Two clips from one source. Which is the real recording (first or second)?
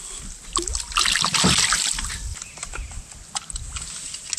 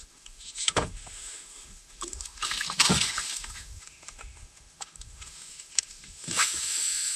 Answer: first